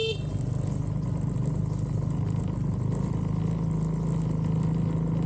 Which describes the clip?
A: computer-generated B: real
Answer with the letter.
B